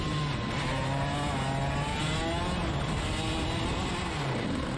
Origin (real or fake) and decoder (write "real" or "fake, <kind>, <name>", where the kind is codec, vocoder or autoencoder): real